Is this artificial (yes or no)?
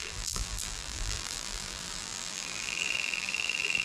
yes